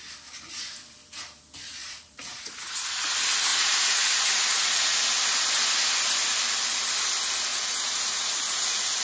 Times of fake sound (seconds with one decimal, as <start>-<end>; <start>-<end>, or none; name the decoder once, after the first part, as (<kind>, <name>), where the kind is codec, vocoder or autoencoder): 1.8-3.1 (vocoder, Vocos); 3.5-5.0; 7.5-9.0